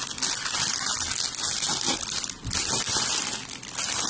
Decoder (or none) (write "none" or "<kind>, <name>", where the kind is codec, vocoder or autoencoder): none